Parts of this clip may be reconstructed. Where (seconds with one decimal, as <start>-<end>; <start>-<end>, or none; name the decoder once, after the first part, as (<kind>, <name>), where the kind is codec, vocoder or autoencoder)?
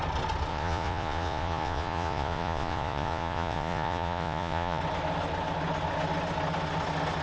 0.5-4.8 (vocoder, Vocos)